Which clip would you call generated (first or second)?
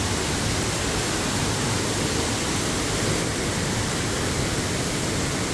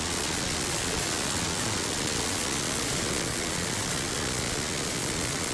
second